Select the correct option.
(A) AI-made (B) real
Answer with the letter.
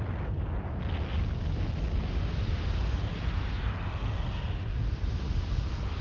B